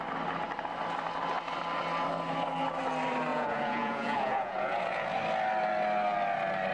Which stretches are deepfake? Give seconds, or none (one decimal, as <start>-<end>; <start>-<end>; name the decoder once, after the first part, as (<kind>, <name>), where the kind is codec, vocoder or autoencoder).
3.3-5.2 (vocoder, Vocos)